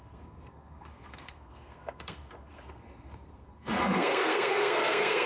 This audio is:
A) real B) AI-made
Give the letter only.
B